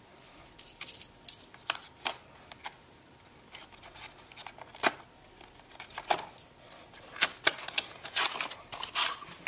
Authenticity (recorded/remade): recorded